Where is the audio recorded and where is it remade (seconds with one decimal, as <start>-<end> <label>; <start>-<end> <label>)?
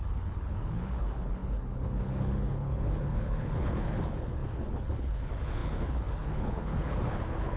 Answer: 0.0-7.6 remade